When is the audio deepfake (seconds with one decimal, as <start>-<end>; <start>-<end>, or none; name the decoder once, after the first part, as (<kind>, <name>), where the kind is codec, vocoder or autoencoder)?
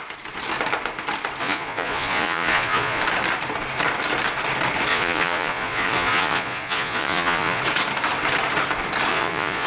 1.4-3.0 (vocoder, Vocos); 4.9-7.6; 9.1-9.7